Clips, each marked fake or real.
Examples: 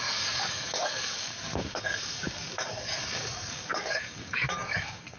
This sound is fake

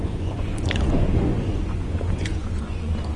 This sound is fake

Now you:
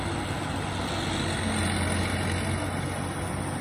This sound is real